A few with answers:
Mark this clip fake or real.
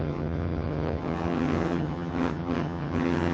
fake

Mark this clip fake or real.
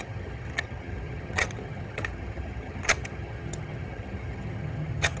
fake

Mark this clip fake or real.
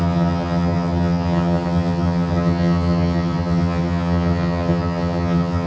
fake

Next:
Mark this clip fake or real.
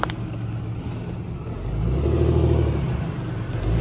real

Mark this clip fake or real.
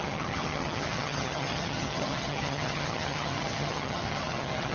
fake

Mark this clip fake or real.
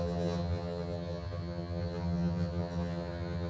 fake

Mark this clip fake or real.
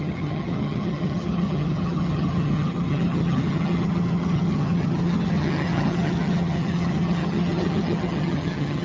fake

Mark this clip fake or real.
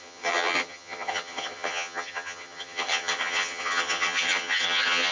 fake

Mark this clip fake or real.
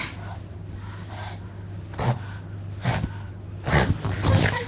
real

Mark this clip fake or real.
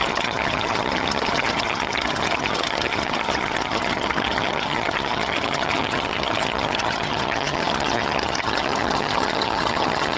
fake